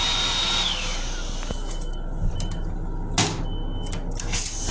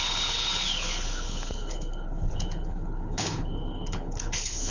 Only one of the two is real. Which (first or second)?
first